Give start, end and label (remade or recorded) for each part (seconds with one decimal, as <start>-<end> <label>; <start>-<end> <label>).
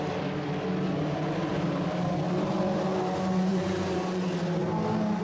0.0-1.5 recorded; 1.5-2.6 remade; 2.6-3.5 recorded; 3.5-4.1 remade; 4.1-5.2 recorded